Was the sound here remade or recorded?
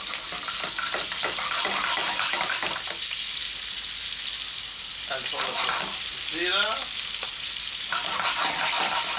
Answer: recorded